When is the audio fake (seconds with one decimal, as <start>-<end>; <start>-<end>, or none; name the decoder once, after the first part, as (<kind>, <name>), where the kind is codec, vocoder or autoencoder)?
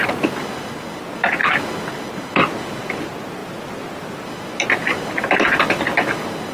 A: none